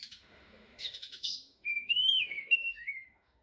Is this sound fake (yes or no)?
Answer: yes